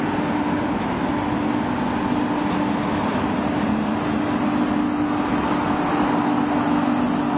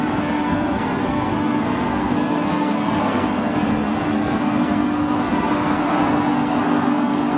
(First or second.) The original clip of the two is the first